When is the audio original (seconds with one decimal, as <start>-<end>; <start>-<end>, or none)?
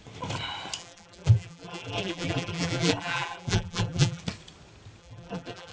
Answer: 0.0-0.8; 4.2-5.0